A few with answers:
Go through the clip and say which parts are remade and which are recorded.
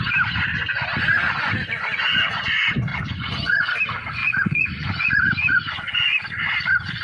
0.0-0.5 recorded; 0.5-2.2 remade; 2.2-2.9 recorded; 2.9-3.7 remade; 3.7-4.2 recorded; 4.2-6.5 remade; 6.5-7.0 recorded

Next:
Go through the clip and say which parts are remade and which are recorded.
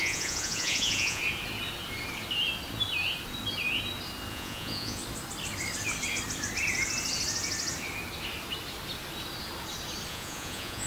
0.0-1.2 remade; 1.2-4.3 recorded; 4.3-5.0 remade; 5.0-10.1 recorded; 10.1-10.9 remade